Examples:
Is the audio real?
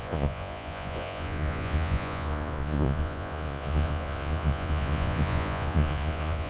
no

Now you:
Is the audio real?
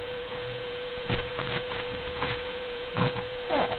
no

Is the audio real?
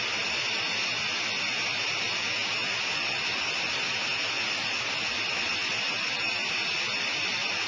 yes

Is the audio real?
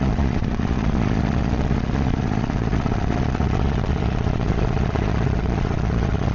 no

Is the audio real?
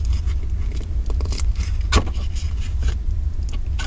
yes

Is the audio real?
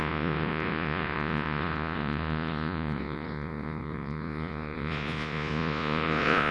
no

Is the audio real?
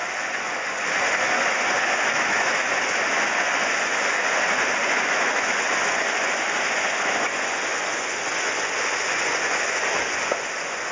no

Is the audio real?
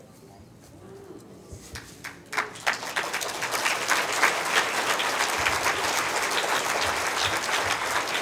yes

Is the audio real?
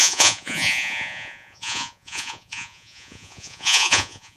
no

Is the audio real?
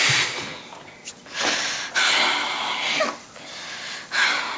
yes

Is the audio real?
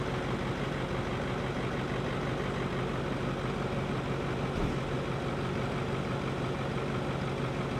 yes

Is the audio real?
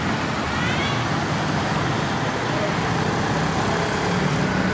yes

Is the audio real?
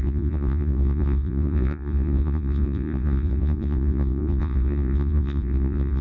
no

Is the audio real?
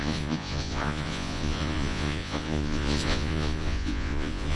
no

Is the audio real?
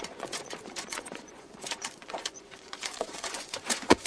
no